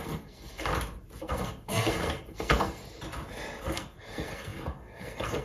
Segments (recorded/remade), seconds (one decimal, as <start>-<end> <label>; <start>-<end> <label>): 0.0-0.7 remade; 0.7-1.2 recorded; 1.2-2.8 remade; 2.8-3.6 recorded; 3.6-5.4 remade